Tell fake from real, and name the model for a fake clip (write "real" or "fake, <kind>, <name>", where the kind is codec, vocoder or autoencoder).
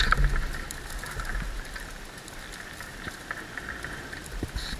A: real